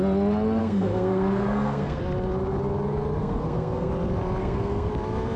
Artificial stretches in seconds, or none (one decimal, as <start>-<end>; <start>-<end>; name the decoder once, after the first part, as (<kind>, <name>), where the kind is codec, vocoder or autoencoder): 0.6-2.0 (codec, SNAC); 3.2-3.9; 4.4-4.9